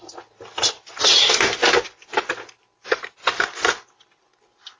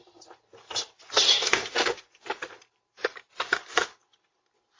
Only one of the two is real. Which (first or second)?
first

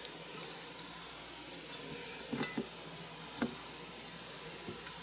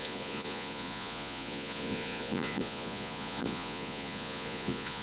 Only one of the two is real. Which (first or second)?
first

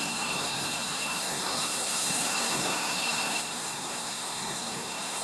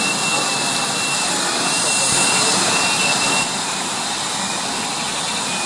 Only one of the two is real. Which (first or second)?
second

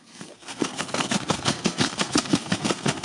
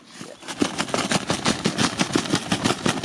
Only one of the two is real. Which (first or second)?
second